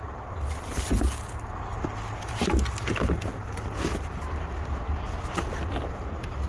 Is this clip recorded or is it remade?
recorded